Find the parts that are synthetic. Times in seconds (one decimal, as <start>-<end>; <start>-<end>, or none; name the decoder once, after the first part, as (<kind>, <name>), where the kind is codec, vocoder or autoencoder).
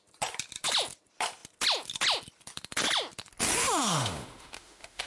3.6-5.1 (autoencoder, DAC-VAE)